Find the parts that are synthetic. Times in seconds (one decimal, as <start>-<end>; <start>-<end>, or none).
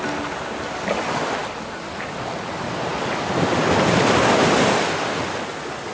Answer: none